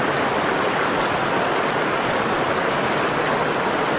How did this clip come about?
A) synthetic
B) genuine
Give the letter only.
B